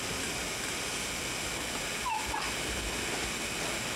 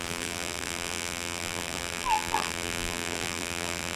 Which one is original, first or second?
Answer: first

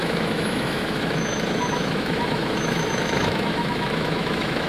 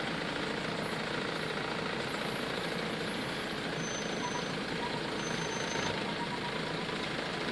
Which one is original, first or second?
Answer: second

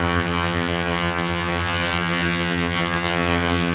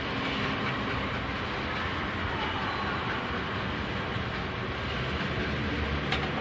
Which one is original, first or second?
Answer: second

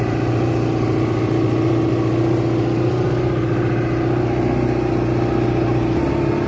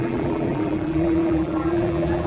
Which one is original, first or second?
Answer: first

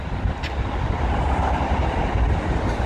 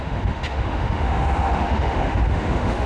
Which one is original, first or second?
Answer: first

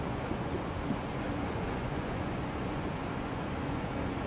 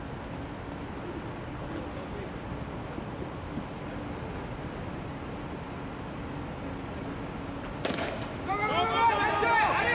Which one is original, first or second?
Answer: second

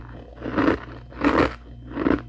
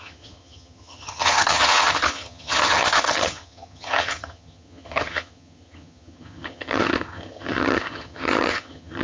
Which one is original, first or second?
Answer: first